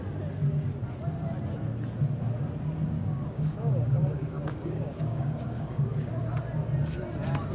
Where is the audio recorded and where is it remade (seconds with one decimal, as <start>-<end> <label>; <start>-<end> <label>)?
0.0-3.0 recorded; 3.0-6.1 remade; 6.1-7.5 recorded